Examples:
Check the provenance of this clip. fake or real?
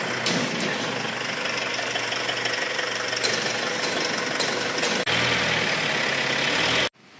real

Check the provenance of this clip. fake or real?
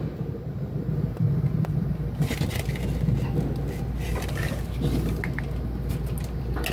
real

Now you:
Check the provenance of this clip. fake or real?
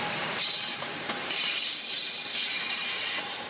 fake